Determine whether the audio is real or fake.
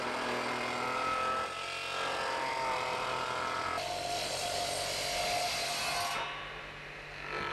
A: real